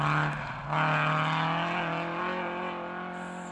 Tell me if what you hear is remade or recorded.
recorded